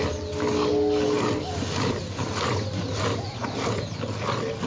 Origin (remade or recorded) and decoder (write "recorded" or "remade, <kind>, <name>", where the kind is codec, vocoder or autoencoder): recorded